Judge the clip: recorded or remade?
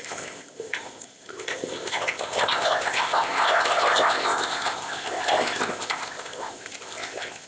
remade